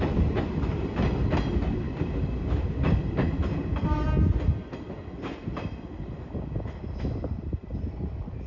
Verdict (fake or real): real